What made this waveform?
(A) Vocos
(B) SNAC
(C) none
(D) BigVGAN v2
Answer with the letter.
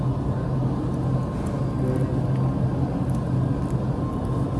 C